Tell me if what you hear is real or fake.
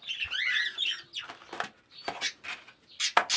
real